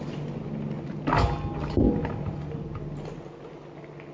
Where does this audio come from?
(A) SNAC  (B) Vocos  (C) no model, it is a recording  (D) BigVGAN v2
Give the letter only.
C